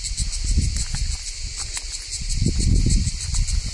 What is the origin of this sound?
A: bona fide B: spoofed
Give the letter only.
A